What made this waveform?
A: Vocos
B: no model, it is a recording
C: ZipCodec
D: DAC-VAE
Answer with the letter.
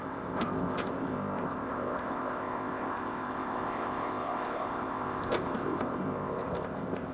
C